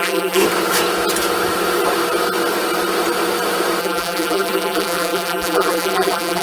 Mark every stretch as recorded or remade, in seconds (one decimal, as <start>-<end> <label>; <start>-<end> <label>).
0.0-0.4 remade; 0.4-3.8 recorded; 3.8-6.4 remade